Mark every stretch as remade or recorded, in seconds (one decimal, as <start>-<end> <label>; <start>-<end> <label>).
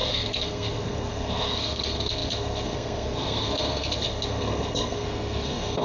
0.0-5.8 remade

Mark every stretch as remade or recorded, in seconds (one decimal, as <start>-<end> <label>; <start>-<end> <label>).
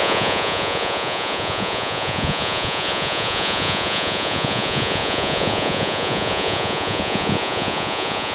0.0-8.3 remade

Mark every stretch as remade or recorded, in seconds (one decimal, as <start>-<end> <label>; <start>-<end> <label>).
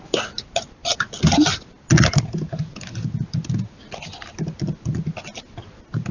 0.0-6.1 recorded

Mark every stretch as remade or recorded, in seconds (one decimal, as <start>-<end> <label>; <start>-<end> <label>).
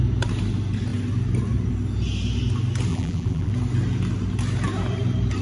0.0-2.9 recorded; 2.9-3.5 remade; 3.5-5.4 recorded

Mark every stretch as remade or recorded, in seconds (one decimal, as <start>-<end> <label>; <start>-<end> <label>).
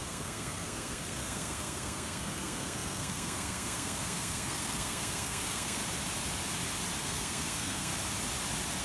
0.0-5.8 remade; 5.8-7.0 recorded; 7.0-7.9 remade; 7.9-8.8 recorded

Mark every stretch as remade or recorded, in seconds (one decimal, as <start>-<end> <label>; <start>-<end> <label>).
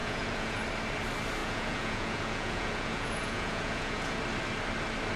0.0-0.6 remade; 0.6-1.4 recorded; 1.4-4.2 remade; 4.2-5.2 recorded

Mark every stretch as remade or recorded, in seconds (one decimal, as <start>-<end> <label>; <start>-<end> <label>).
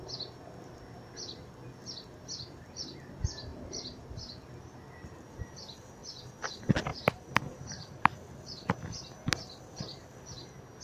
0.0-3.5 recorded; 3.5-4.0 remade; 4.0-6.9 recorded; 6.9-8.0 remade; 8.0-10.8 recorded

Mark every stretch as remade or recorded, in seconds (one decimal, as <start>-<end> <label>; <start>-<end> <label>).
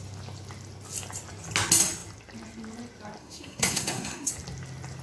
0.0-3.2 recorded; 3.2-4.3 remade; 4.3-5.0 recorded